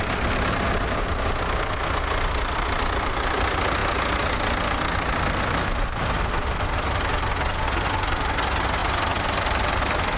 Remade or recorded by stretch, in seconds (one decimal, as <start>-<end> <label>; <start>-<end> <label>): 0.0-10.2 recorded